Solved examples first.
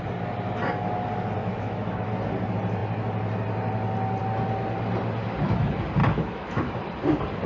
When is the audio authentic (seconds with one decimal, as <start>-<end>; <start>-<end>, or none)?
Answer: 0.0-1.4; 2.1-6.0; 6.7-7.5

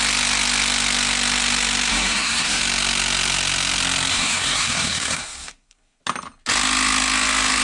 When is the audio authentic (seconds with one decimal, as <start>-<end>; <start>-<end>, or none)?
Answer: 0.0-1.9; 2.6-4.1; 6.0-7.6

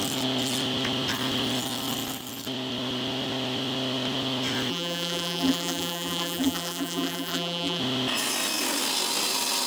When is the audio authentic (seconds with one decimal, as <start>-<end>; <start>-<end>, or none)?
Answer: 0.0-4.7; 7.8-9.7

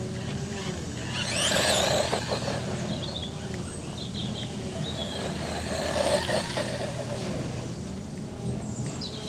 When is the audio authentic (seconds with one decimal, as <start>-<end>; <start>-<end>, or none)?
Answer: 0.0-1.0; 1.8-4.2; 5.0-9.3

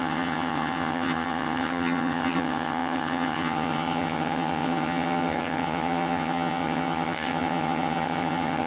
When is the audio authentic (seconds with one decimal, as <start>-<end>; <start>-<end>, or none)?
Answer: none